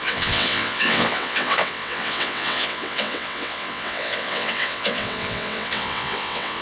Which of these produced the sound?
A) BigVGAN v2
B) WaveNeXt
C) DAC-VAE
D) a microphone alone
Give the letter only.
B